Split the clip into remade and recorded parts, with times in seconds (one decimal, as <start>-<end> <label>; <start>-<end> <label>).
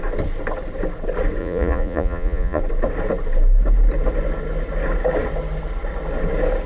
0.0-1.4 recorded; 1.4-2.6 remade; 2.6-6.7 recorded